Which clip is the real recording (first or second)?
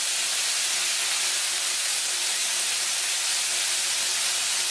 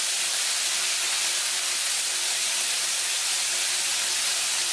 first